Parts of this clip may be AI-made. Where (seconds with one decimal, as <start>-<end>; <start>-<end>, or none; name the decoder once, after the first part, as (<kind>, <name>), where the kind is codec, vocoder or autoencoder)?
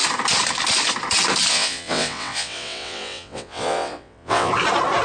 1.5-4.5 (vocoder, WaveNeXt)